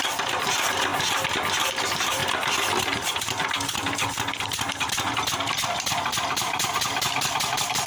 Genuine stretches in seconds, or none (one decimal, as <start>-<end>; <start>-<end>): 0.9-1.7; 2.2-3.2